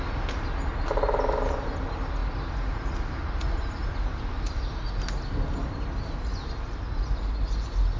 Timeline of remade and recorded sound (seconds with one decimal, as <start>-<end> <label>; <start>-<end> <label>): 0.0-8.0 recorded